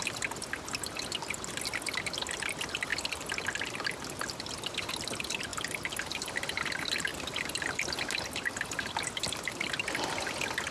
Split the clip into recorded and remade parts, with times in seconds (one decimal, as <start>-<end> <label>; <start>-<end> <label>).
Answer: 0.0-10.7 recorded